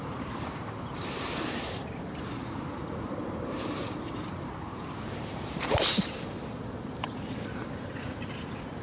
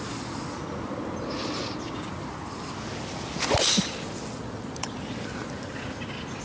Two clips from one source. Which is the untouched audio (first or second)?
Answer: second